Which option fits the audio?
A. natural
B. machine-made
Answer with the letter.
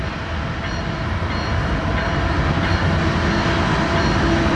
A